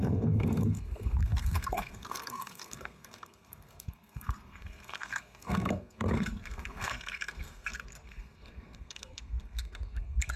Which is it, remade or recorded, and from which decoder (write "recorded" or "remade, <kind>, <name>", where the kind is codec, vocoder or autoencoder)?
remade, codec, SNAC